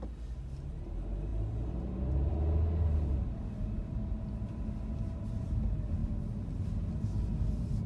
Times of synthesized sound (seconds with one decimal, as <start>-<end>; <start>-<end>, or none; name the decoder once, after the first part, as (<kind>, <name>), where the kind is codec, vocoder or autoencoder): none